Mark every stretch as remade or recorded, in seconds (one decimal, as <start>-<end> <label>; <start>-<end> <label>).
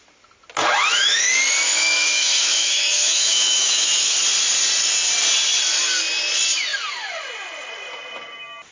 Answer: 0.0-0.6 recorded; 0.6-1.2 remade; 1.2-1.7 recorded; 1.7-4.2 remade; 4.2-8.7 recorded